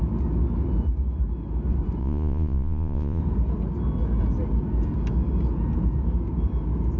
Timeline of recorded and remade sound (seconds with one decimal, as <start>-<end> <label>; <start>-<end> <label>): 0.0-2.0 recorded; 2.0-3.2 remade; 3.2-7.0 recorded